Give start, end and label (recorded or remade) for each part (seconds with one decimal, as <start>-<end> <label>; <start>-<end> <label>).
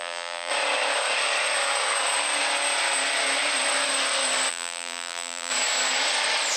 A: 0.0-0.5 remade; 0.5-4.5 recorded; 4.5-5.5 remade; 5.5-6.6 recorded